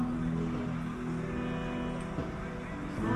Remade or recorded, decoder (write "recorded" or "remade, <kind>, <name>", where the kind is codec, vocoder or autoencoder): recorded